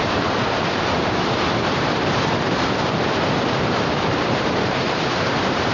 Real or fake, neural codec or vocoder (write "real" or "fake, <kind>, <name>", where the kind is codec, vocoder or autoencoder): fake, vocoder, BigVGAN v2